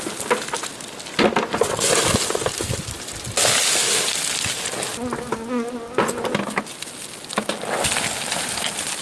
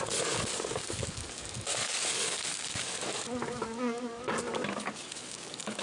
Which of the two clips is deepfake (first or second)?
second